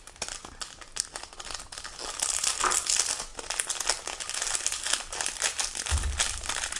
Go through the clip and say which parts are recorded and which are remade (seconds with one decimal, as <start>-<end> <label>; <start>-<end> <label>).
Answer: 0.0-6.8 recorded